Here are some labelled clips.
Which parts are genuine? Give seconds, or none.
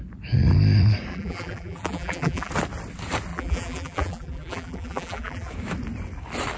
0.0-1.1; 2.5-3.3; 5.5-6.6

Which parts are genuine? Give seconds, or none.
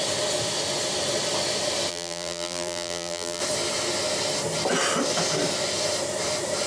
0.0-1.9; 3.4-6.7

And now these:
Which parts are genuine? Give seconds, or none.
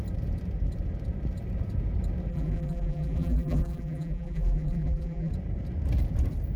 0.0-2.3; 5.3-6.6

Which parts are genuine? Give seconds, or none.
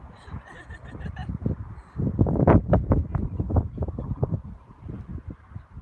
0.0-5.1